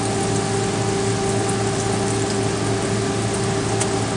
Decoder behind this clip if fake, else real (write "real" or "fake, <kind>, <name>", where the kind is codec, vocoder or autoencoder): real